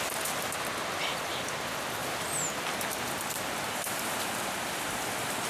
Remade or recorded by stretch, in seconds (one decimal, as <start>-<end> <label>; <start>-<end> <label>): 0.0-5.5 recorded